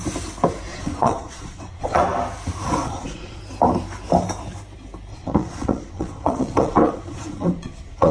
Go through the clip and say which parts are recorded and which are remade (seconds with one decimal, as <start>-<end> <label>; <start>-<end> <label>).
0.0-0.7 recorded; 0.7-2.0 remade; 2.0-2.8 recorded; 2.8-3.4 remade; 3.4-5.1 recorded; 5.1-8.1 remade